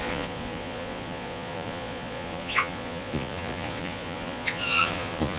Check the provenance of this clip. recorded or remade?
remade